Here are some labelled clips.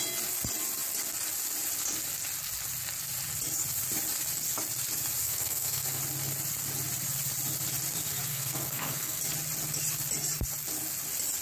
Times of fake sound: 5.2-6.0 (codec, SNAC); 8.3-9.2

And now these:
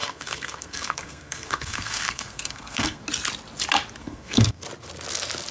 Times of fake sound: 0.0-3.0 (codec, SNAC); 4.0-4.6

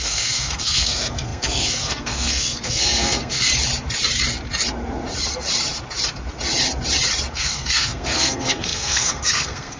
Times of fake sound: 0.0-3.5 (codec, SNAC); 7.3-9.8